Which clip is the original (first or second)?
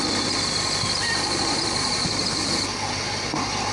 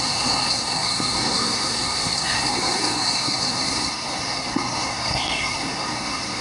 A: first